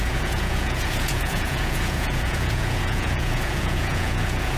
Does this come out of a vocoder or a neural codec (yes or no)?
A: yes